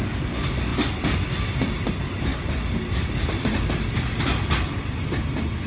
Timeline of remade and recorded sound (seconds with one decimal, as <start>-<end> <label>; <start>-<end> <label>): 0.0-5.7 recorded

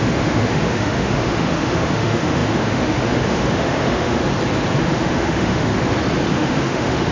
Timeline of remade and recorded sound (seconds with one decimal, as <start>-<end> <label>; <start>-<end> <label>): 0.0-4.2 remade; 4.2-4.8 recorded; 4.8-5.7 remade; 5.7-6.3 recorded; 6.3-7.1 remade